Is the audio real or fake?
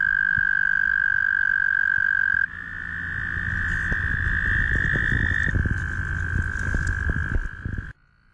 real